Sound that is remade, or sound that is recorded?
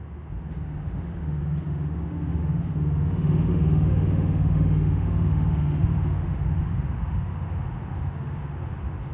remade